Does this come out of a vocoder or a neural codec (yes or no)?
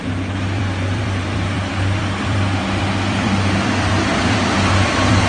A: yes